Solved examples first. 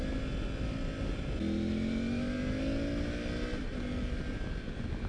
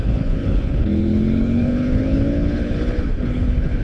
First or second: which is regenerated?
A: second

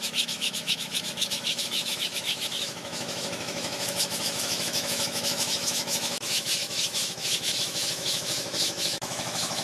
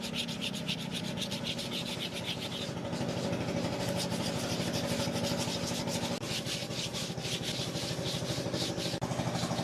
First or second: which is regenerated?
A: first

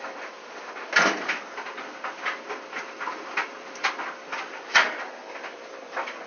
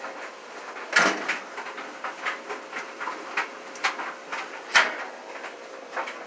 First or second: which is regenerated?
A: first